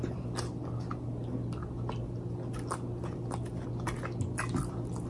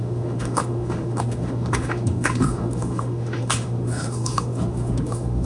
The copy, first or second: second